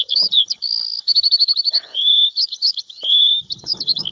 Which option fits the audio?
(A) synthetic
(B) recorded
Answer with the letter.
A